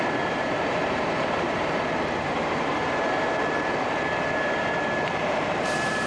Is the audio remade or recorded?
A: remade